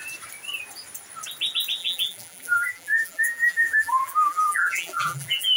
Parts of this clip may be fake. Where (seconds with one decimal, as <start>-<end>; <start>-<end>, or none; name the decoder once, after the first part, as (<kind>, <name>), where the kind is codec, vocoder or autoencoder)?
1.8-5.6 (vocoder, BigVGAN v2)